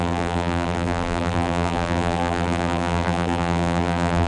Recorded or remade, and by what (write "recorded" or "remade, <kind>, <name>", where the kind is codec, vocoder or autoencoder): remade, vocoder, BigVGAN v2